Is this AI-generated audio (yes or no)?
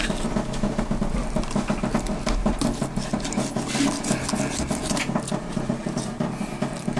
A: no